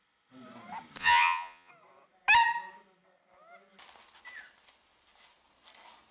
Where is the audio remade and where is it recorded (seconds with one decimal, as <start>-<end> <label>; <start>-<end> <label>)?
0.0-1.0 recorded; 1.0-1.7 remade; 1.7-6.1 recorded